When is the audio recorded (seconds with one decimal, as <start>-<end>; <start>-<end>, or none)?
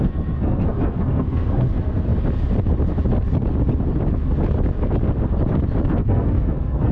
2.1-5.9